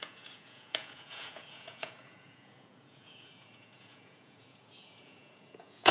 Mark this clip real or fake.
fake